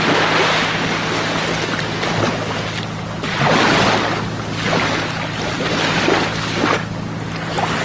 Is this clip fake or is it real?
real